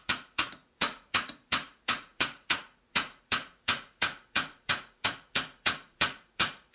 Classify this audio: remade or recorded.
remade